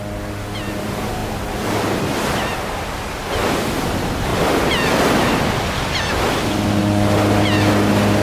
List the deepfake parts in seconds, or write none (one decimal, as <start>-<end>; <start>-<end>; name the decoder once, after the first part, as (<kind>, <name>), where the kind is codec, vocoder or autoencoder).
none